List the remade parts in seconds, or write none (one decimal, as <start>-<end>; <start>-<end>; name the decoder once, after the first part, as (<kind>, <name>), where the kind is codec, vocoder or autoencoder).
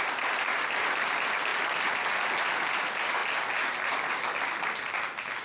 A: none